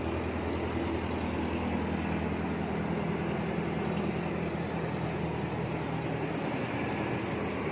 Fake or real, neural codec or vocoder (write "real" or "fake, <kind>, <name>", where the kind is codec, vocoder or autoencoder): real